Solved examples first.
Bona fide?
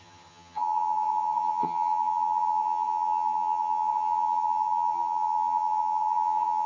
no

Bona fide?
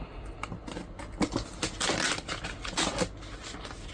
yes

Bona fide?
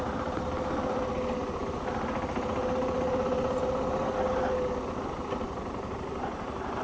yes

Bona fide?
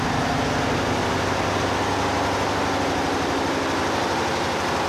yes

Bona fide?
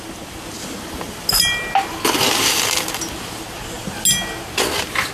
yes